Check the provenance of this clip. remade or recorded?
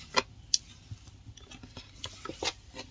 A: recorded